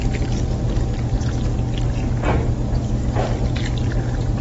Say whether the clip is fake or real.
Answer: real